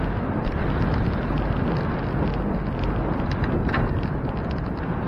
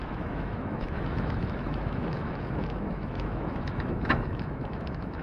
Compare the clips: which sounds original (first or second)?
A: first